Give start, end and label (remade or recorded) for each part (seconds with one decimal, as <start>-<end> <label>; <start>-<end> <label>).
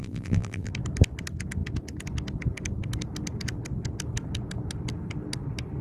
0.0-0.7 remade; 0.7-5.8 recorded